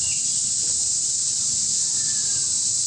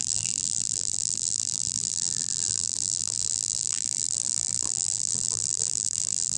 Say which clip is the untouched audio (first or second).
first